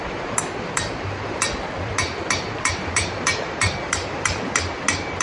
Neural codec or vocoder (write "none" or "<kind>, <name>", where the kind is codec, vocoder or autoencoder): none